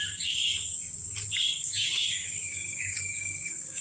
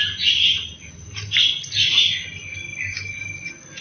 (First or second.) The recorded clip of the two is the second